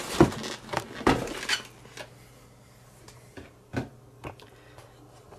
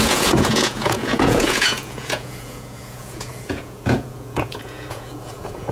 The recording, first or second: first